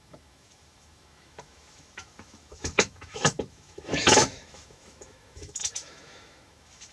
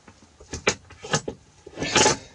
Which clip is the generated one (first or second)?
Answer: first